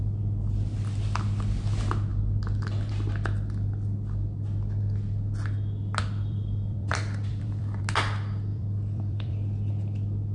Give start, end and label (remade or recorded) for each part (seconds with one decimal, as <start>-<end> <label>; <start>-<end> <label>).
0.0-6.0 recorded; 6.0-7.8 remade; 7.8-8.5 recorded; 8.5-9.7 remade; 9.7-10.3 recorded